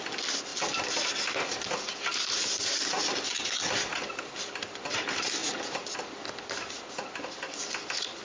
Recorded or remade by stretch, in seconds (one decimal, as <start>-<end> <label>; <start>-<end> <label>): 0.0-8.2 recorded